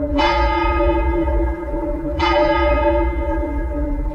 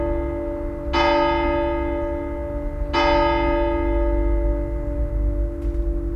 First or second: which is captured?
second